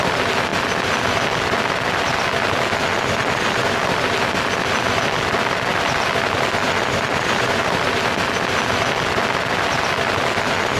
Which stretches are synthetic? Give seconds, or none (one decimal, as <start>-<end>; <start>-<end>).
5.7-7.6